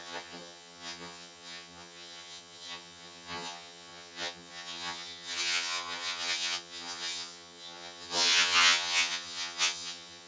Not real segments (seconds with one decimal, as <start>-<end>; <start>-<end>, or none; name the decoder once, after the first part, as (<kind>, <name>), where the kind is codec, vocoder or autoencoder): 0.0-10.3 (vocoder, HiFi-GAN)